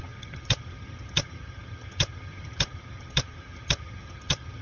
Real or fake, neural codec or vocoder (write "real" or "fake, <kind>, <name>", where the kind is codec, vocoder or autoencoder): fake, vocoder, HiFi-GAN